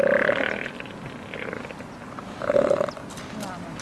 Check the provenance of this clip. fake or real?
real